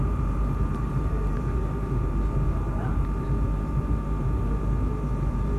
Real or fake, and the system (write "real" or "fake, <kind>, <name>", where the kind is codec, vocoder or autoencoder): fake, vocoder, BigVGAN v2